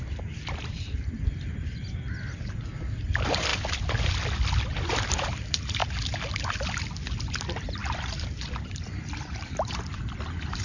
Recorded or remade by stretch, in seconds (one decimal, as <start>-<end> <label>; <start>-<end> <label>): 0.0-3.5 remade; 3.5-4.8 recorded; 4.8-5.8 remade; 5.8-7.3 recorded; 7.3-10.6 remade